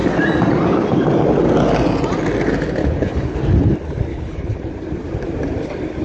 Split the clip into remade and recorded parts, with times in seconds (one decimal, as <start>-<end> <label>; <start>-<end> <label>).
0.0-2.8 recorded; 2.8-3.4 remade; 3.4-4.1 recorded; 4.1-4.7 remade; 4.7-6.0 recorded